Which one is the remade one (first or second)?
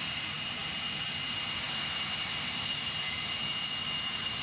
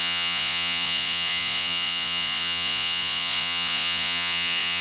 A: second